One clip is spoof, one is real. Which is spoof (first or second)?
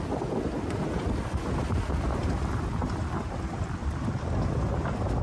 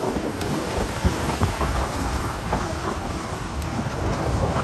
second